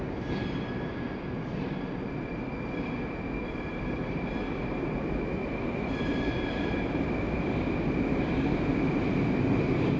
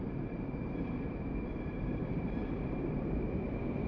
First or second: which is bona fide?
first